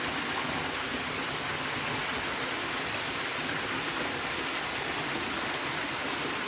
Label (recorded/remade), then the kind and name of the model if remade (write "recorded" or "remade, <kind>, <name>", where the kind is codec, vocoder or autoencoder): recorded